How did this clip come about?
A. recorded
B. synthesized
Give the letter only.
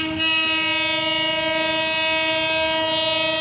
A